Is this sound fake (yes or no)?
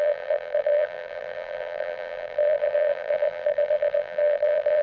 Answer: yes